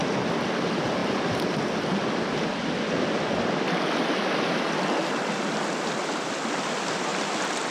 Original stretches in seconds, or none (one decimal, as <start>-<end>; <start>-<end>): 0.0-7.7